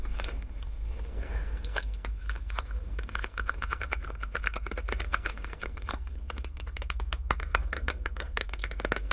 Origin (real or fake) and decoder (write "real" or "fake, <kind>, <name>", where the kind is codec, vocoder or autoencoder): fake, codec, SNAC